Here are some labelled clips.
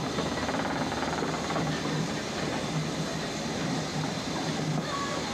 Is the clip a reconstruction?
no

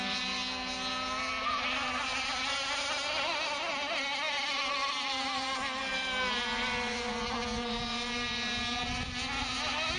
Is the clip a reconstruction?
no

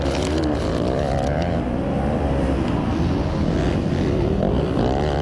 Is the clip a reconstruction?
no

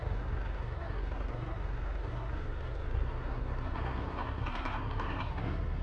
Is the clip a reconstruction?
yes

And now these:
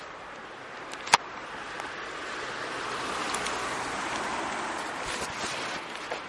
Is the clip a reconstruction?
no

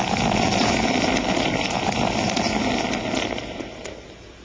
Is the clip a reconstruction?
no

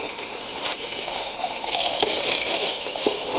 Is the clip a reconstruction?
yes